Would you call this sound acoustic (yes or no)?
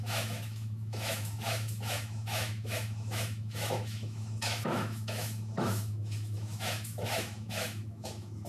no